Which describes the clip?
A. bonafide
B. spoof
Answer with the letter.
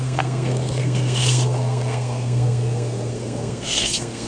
B